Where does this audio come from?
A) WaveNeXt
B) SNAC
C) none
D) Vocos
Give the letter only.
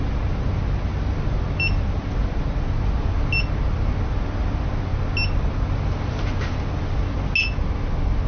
C